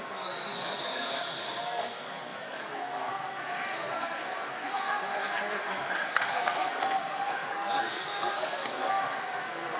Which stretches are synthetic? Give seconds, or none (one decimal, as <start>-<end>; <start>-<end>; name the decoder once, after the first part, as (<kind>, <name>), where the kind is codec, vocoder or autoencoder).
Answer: 0.0-9.8 (codec, SNAC)